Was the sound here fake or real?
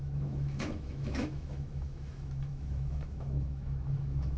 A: fake